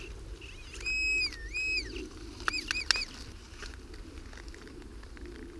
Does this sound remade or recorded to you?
recorded